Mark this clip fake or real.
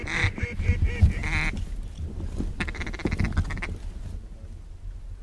real